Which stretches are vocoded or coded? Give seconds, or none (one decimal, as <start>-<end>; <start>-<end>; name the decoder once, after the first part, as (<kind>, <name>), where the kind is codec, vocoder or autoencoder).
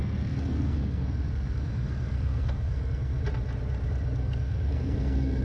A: 0.0-3.2 (codec, SNAC); 4.2-5.4